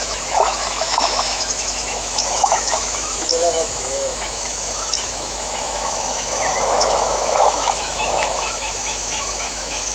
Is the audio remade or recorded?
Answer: remade